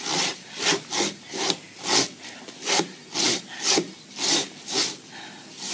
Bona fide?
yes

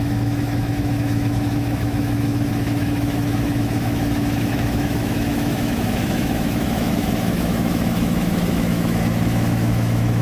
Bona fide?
no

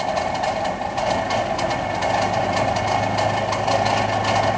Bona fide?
yes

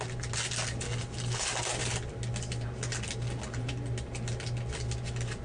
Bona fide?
yes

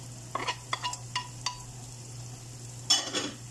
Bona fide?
yes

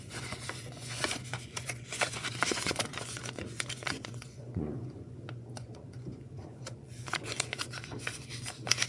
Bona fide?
no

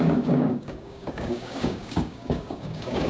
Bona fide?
no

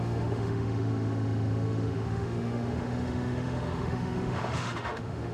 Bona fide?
no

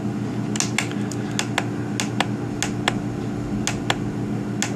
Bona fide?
yes